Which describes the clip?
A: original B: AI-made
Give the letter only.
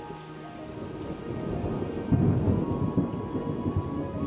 A